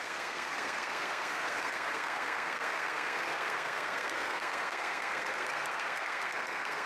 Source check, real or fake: fake